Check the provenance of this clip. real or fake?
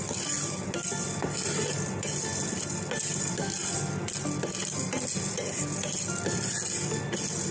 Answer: real